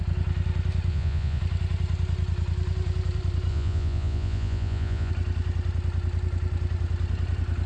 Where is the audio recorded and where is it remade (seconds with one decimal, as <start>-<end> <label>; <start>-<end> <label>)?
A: 0.0-0.9 recorded; 0.9-1.4 remade; 1.4-3.5 recorded; 3.5-5.1 remade; 5.1-7.7 recorded